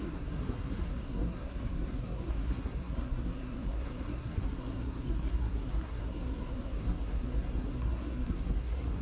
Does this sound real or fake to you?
fake